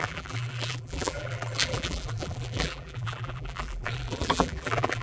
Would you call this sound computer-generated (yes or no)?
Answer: yes